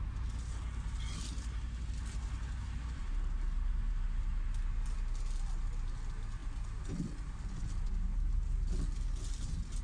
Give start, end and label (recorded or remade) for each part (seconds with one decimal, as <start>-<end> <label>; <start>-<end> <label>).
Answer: 0.0-9.8 recorded